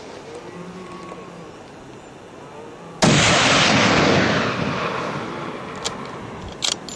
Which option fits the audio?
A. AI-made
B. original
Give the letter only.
B